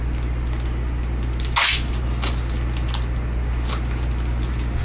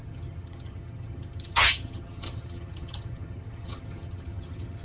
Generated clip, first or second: second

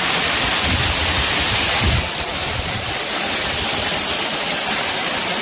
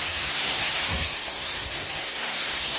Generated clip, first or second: second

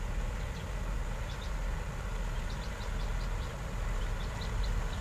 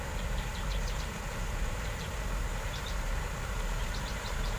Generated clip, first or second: second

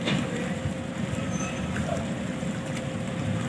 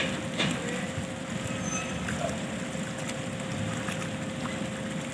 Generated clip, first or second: first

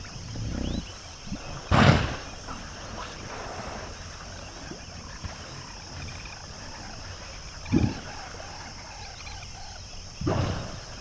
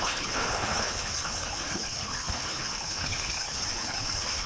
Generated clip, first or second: second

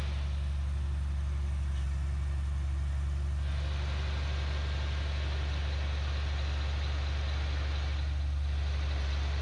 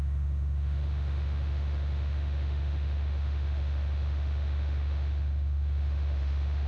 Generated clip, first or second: second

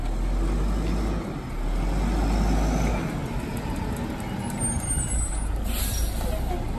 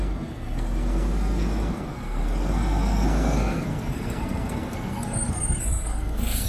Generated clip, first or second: second